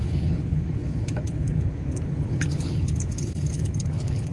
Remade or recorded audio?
remade